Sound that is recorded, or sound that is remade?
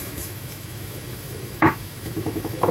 remade